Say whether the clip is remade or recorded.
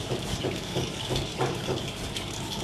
remade